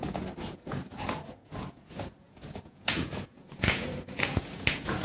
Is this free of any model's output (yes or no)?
no